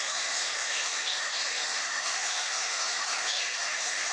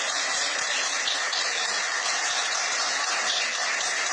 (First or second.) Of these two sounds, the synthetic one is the first